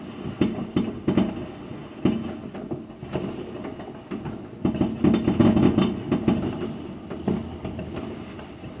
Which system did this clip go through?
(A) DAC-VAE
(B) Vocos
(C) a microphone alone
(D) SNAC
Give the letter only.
C